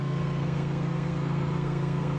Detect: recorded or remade remade